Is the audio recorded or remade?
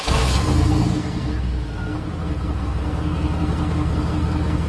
remade